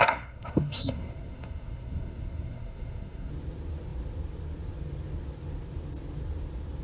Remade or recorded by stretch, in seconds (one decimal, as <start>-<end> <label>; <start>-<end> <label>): 0.0-3.3 remade; 3.3-6.8 recorded